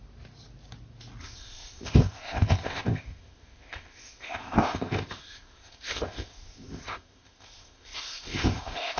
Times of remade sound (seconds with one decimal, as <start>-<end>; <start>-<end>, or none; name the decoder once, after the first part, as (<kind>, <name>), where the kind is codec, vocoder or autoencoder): 1.2-9.0 (codec, ZipCodec)